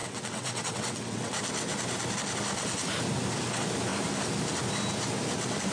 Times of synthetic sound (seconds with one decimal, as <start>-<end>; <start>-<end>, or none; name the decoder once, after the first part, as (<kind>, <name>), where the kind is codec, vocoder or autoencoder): 0.0-1.4 (vocoder, WaveNeXt)